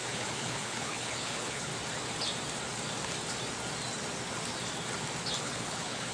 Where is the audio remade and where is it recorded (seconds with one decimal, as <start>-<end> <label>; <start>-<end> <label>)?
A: 0.0-1.7 remade; 1.7-5.4 recorded; 5.4-6.1 remade